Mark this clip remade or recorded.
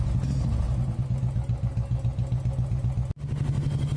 recorded